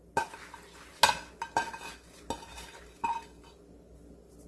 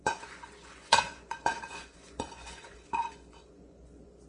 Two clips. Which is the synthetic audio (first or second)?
second